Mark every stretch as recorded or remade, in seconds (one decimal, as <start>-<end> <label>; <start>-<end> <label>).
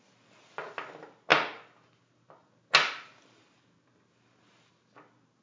0.0-5.4 recorded